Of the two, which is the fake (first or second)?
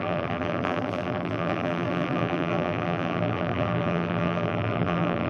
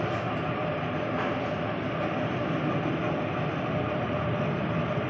first